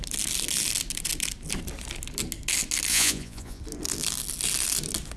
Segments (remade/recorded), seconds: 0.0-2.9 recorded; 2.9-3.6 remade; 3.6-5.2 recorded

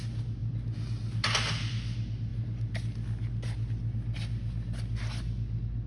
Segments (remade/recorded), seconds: 0.0-5.9 recorded

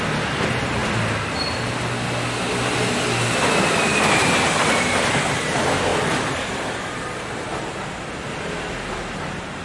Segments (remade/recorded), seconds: 0.0-9.6 recorded